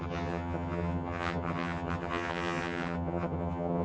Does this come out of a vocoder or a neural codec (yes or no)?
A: yes